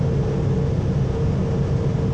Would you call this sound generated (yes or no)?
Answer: no